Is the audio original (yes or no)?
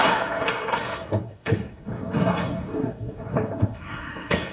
no